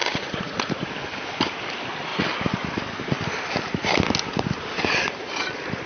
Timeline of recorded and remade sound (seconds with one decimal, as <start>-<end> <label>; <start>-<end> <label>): 0.0-0.9 remade; 0.9-5.9 recorded